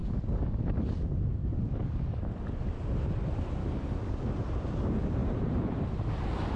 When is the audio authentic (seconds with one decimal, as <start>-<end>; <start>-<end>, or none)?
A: 0.6-1.4; 2.2-3.6; 4.1-6.6